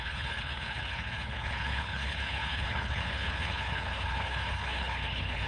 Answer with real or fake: fake